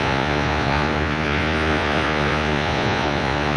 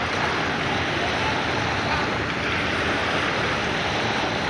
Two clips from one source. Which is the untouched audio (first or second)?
second